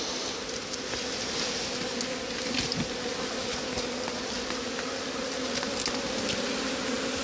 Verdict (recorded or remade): recorded